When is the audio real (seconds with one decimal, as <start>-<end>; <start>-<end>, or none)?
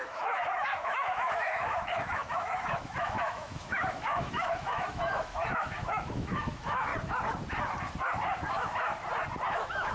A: 6.9-8.5; 8.9-9.5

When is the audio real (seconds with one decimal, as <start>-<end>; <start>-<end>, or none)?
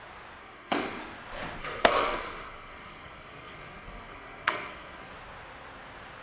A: 0.0-0.4; 1.0-1.6; 5.1-6.2